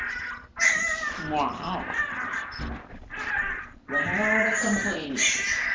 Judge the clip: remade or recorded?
recorded